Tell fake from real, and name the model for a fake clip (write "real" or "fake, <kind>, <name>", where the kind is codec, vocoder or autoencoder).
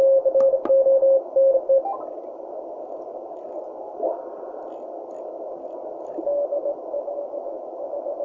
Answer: real